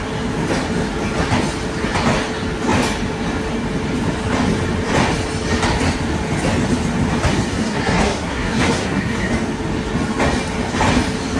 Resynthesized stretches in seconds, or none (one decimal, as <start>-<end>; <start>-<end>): 7.3-9.3